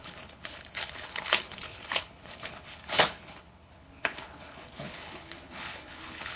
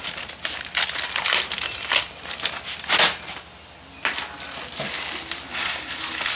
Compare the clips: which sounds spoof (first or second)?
first